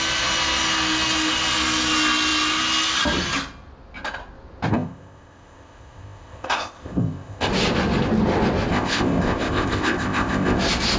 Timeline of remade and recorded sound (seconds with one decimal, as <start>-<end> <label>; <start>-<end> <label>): 0.0-4.7 recorded; 4.7-7.5 remade; 7.5-8.7 recorded; 8.7-10.6 remade; 10.6-11.0 recorded